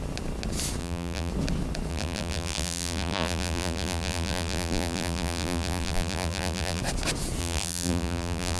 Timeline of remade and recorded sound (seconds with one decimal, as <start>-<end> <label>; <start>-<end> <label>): 0.0-0.8 recorded; 0.8-1.3 remade; 1.3-1.9 recorded; 1.9-6.8 remade; 6.8-7.4 recorded; 7.4-8.6 remade